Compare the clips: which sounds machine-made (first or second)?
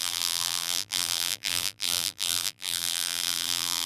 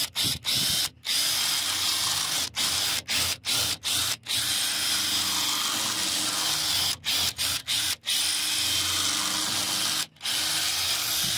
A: first